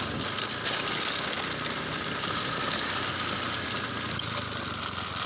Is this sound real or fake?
real